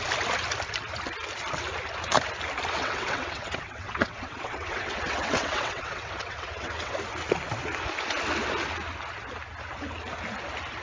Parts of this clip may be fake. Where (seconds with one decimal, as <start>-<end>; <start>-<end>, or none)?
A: 2.8-6.9